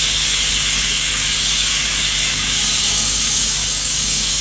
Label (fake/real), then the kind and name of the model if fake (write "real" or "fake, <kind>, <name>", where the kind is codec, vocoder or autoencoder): fake, codec, DAC